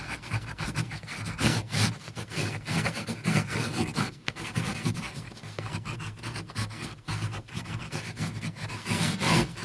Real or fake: fake